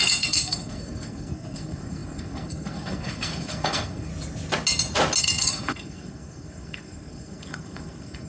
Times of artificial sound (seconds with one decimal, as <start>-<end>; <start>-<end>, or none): 0.0-4.1; 5.2-8.3